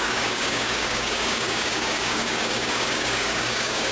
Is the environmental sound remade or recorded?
remade